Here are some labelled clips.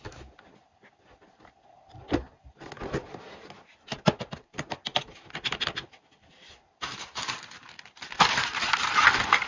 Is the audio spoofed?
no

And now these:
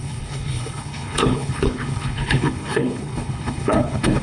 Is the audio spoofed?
yes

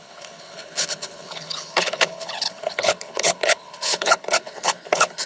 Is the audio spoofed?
yes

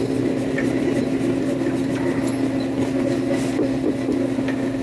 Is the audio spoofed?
no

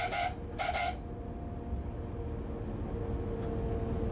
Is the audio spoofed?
no